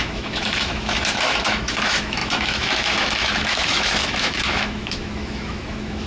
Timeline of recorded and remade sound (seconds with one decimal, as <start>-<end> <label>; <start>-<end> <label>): 0.0-6.1 remade